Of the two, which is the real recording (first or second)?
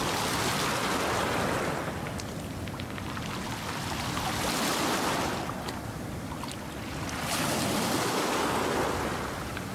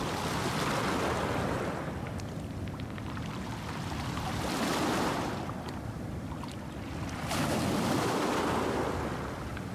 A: first